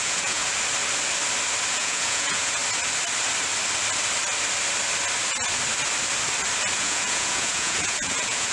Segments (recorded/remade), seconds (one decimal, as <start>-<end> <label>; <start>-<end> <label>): 0.0-0.4 remade; 0.4-1.7 recorded; 1.7-2.6 remade; 2.6-6.8 recorded; 6.8-8.5 remade